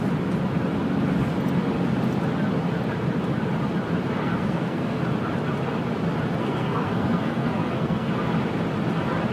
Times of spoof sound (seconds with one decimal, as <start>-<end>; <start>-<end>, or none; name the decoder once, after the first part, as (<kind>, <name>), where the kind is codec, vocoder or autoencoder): 4.2-5.0 (codec, SNAC); 6.4-8.1